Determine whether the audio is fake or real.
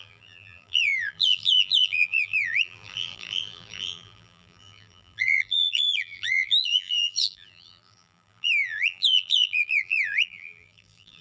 fake